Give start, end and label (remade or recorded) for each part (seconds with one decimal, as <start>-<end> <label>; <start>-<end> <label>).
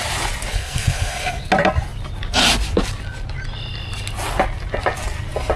0.0-0.5 recorded; 0.5-1.5 remade; 1.5-5.6 recorded